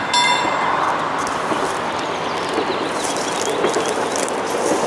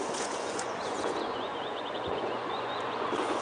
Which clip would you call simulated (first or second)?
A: second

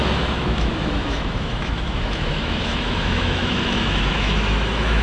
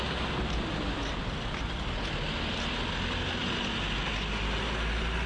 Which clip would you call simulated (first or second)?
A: first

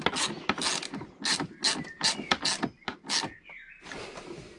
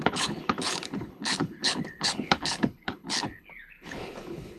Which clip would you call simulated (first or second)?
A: second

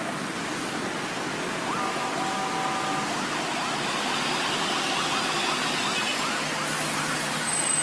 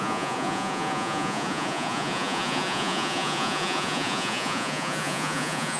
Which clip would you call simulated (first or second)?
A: second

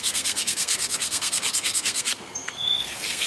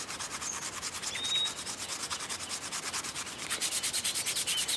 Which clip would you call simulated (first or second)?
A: first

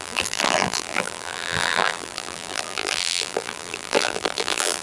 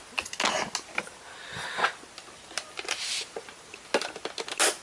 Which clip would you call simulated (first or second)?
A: first